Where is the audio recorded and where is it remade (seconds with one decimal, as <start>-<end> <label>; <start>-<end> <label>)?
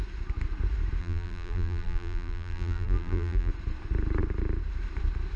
0.0-1.0 recorded; 1.0-3.5 remade; 3.5-5.4 recorded